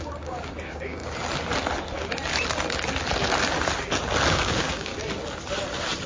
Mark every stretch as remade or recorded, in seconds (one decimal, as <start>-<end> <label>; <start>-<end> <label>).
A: 0.0-1.0 remade; 1.0-4.3 recorded; 4.3-4.9 remade; 4.9-6.1 recorded